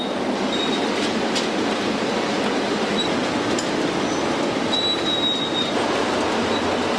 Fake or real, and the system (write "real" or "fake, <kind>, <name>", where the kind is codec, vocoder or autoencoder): real